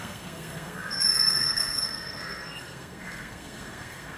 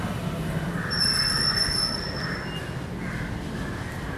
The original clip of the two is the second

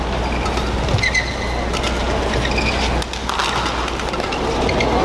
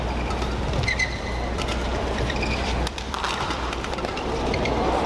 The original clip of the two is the first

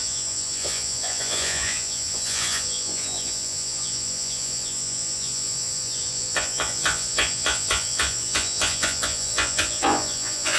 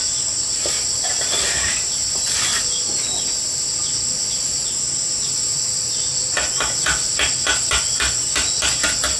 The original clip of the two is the second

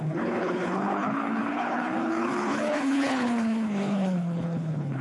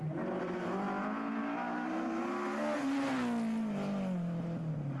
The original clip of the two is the second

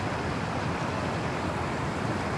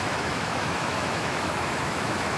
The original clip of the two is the first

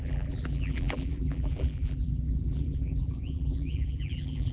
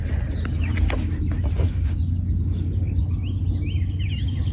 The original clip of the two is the second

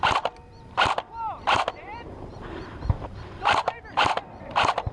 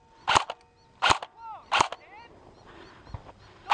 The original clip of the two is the second